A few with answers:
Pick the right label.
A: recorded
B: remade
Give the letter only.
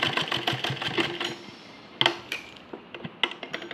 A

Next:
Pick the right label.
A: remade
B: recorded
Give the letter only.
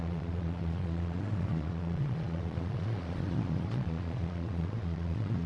A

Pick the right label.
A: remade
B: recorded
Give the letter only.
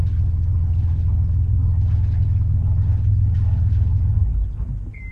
B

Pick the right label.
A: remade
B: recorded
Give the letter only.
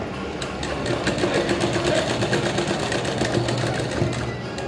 B